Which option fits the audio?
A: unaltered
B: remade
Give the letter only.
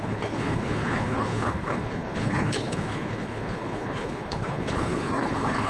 B